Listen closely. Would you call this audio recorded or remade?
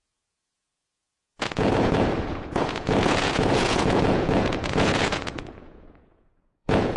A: remade